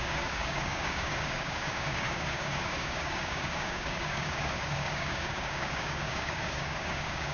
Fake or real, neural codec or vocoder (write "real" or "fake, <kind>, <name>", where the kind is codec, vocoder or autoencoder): fake, codec, DAC